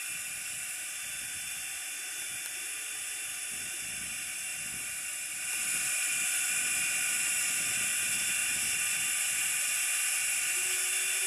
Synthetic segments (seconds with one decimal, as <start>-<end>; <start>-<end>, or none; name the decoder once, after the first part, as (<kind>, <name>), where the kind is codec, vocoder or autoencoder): none